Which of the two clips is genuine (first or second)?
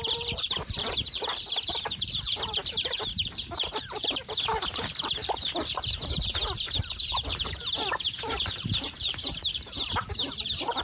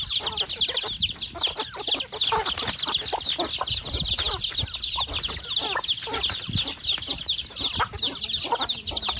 second